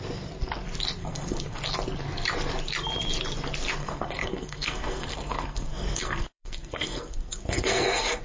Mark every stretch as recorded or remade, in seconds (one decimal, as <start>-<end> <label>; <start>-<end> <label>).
0.0-1.0 recorded; 1.0-1.6 remade; 1.6-3.8 recorded; 3.8-8.2 remade